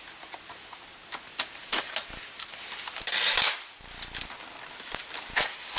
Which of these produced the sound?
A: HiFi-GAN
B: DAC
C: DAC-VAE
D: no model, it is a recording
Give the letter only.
D